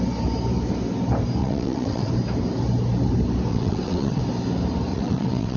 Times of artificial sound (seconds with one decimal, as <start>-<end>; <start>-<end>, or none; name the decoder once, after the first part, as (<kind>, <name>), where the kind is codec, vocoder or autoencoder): 1.4-2.1 (vocoder, WaveNeXt); 3.5-4.2; 4.9-5.6